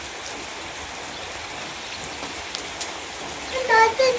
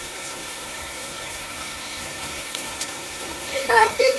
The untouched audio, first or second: first